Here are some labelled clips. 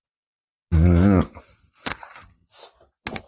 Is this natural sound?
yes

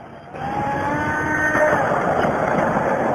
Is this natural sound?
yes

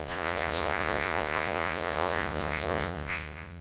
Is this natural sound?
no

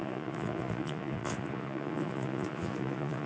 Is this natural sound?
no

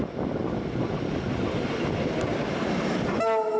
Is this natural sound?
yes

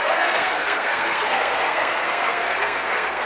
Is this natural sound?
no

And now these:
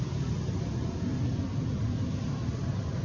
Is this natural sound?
yes